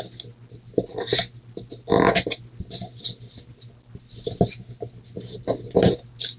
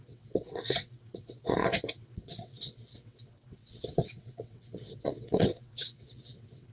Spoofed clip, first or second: second